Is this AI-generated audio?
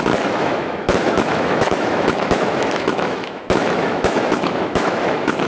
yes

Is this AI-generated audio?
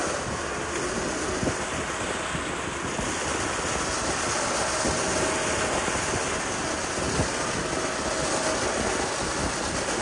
no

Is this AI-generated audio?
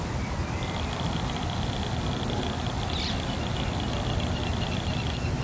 no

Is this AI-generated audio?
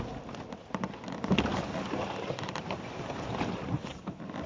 no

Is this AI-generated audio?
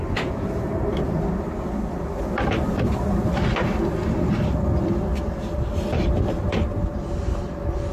no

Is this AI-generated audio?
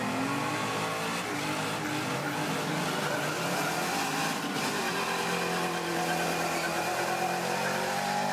no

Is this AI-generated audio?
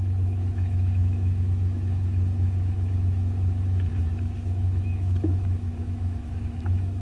yes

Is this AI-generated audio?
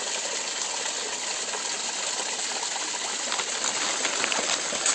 no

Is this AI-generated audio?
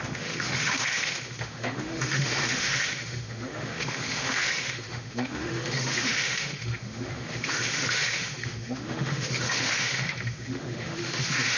yes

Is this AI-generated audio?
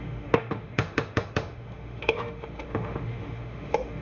yes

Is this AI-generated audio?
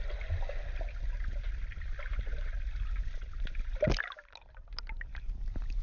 no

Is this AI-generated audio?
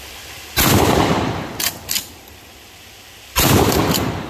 no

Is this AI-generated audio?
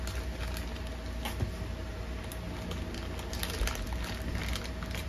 no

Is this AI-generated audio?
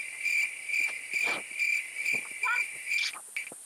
no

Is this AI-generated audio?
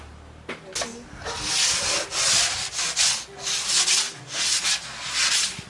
no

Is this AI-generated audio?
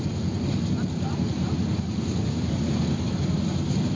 no